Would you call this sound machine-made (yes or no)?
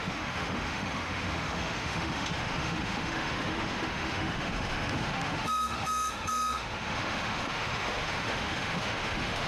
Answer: yes